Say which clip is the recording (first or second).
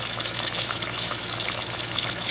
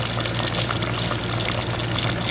second